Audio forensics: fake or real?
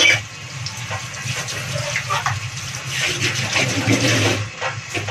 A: real